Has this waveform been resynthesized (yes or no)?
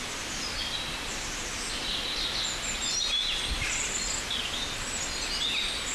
no